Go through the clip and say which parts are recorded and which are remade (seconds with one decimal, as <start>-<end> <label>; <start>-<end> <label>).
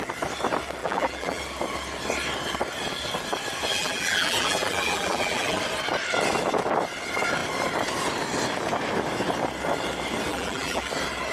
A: 0.0-0.8 recorded; 0.8-1.4 remade; 1.4-3.7 recorded; 3.7-5.6 remade; 5.6-10.3 recorded; 10.3-10.9 remade; 10.9-11.3 recorded